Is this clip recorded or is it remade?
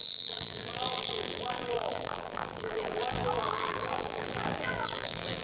remade